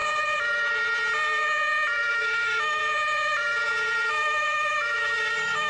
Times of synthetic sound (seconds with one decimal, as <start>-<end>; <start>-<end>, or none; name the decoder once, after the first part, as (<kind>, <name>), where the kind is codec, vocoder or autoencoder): 2.1-2.8 (autoencoder, DAC-VAE); 4.1-5.7